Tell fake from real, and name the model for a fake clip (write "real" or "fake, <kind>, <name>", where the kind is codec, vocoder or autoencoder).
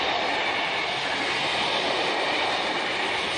real